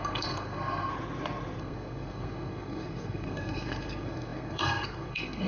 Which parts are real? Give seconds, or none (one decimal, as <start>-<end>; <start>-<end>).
0.9-1.6